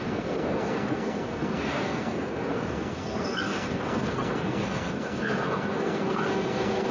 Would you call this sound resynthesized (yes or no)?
yes